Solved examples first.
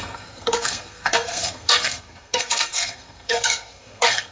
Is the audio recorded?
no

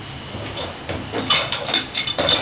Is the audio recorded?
yes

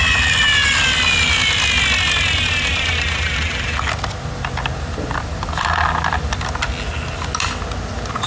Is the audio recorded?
yes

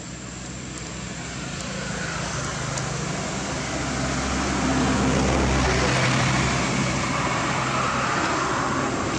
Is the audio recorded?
yes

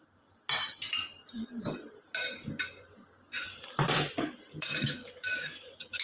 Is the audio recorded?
no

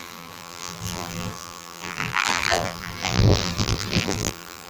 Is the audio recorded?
no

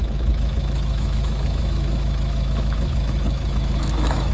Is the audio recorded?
no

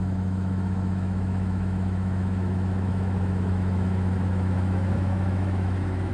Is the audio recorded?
no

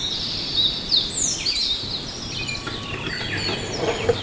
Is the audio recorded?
yes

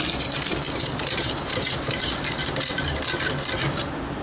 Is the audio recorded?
no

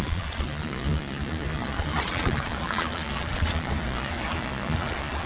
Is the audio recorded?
no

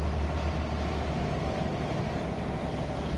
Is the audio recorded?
yes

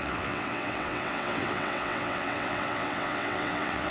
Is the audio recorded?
no